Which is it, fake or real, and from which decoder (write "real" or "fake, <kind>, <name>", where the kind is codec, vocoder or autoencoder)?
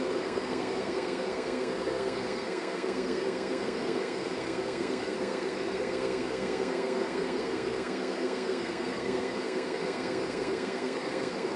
fake, codec, SNAC